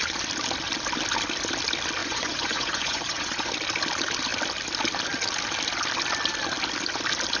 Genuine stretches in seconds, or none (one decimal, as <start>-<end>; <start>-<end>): 0.0-2.0; 3.5-7.4